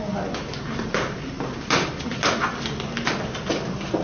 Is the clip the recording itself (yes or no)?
yes